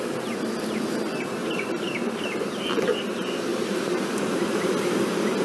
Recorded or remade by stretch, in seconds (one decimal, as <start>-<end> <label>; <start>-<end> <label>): 0.0-1.4 recorded; 1.4-3.0 remade; 3.0-3.5 recorded; 3.5-4.7 remade; 4.7-5.4 recorded